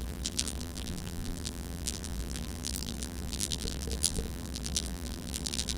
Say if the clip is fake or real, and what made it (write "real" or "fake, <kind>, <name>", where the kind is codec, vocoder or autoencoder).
fake, vocoder, BigVGAN v2